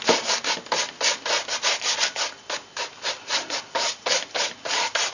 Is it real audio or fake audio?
real